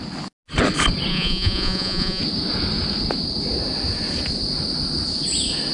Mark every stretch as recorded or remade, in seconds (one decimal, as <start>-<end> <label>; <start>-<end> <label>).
0.0-1.1 recorded; 1.1-2.2 remade; 2.2-5.7 recorded